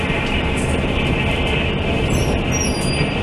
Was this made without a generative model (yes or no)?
yes